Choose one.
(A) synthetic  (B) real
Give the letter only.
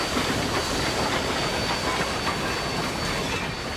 B